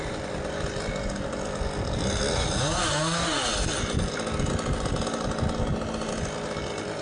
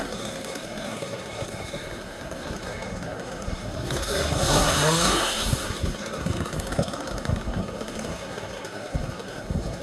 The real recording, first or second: first